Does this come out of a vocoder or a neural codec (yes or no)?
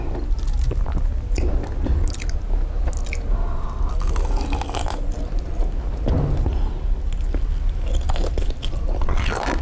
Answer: no